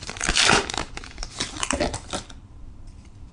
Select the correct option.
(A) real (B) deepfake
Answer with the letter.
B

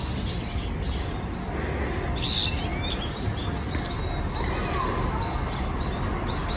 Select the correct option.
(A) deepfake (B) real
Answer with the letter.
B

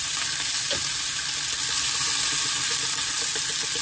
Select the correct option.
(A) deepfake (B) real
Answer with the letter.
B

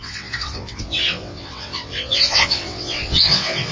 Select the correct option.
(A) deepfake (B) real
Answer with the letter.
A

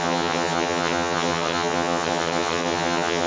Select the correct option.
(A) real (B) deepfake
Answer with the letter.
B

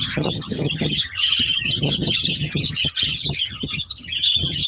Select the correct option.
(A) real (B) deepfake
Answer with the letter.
B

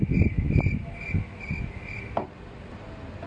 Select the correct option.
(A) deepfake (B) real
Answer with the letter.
B